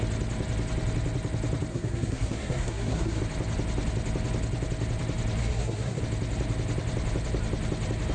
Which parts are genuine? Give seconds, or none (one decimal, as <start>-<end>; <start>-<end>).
0.0-1.7; 3.2-5.4; 6.0-8.1